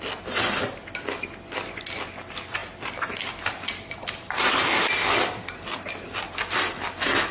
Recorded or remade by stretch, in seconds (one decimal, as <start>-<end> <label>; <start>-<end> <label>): 0.0-7.3 recorded